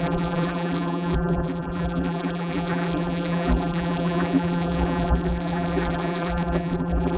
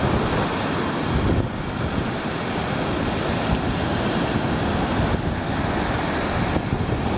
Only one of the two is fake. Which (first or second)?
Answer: first